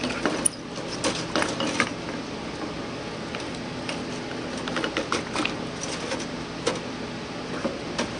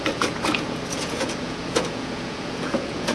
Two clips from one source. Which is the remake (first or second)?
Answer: second